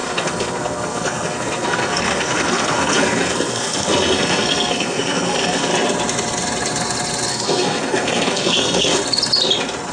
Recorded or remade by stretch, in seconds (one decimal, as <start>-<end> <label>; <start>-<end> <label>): 0.0-5.7 remade; 5.7-7.3 recorded; 7.3-9.0 remade; 9.0-9.9 recorded